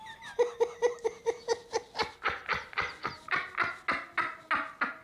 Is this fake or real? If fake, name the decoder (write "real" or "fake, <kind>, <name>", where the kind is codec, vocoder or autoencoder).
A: real